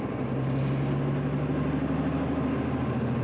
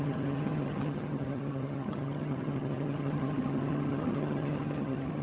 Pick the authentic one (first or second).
first